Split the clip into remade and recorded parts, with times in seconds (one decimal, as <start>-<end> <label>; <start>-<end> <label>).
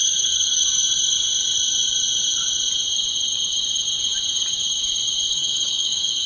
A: 0.0-0.6 remade; 0.6-5.3 recorded; 5.3-6.3 remade